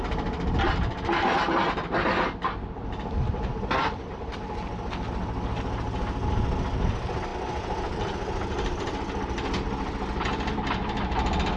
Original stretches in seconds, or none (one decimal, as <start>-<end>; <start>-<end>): 0.0-11.6

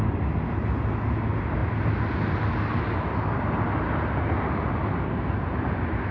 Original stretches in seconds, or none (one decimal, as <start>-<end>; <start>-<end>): 0.0-6.1

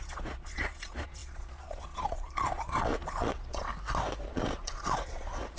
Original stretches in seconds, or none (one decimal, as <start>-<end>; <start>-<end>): 3.7-4.3

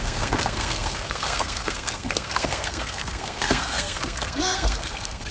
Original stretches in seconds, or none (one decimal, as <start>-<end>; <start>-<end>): none

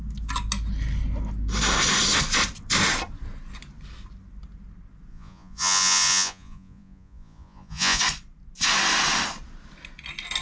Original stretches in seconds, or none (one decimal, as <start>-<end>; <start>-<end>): 0.0-5.1; 8.0-10.4

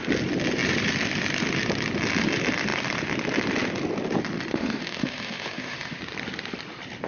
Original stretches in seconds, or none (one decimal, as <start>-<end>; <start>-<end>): 0.0-4.5; 6.0-7.1